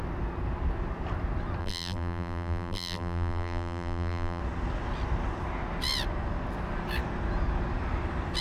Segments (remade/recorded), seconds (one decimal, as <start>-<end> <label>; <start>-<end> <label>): 0.0-1.6 recorded; 1.6-4.4 remade; 4.4-8.4 recorded